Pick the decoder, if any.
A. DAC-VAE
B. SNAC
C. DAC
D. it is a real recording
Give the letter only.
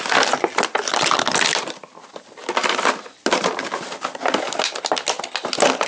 D